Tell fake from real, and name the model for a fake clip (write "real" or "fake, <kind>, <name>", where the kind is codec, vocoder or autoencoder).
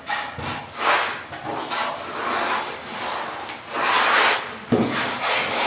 real